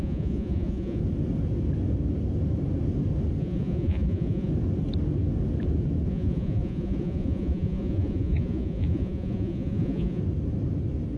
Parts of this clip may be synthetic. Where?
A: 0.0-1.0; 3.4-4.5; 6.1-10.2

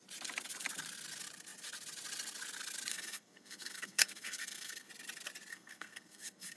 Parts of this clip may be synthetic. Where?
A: 2.9-4.9; 5.5-6.6

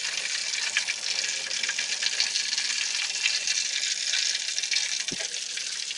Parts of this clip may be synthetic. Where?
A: none

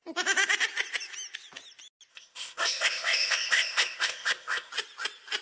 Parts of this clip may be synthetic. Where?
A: 2.1-4.7

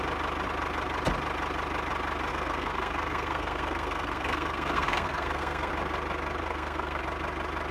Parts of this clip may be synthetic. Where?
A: 2.3-5.7; 6.4-7.0

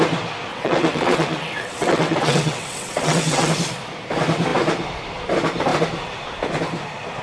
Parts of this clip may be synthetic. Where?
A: 0.5-3.5